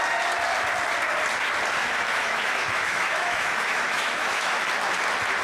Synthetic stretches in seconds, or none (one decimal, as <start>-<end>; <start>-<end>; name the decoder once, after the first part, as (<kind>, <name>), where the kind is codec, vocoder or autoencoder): 1.8-4.6 (autoencoder, DAC-VAE)